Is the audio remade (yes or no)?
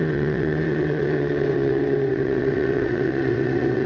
yes